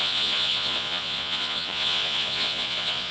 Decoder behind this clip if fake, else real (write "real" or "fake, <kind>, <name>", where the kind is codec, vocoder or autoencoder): fake, vocoder, Vocos